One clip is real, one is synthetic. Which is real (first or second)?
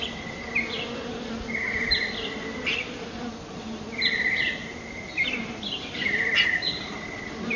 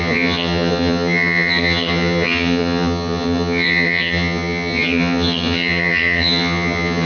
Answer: first